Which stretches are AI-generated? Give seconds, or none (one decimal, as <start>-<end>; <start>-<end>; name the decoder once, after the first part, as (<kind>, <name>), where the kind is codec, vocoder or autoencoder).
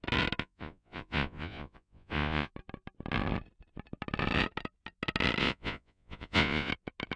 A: 0.4-2.5 (vocoder, Vocos); 5.4-6.7